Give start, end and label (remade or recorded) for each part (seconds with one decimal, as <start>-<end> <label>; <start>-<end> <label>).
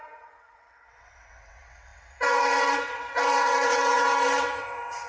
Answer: 0.0-5.1 remade